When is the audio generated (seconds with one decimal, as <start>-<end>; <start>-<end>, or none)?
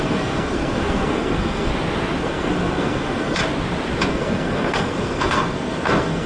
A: 0.0-1.7; 2.2-3.4; 4.1-6.3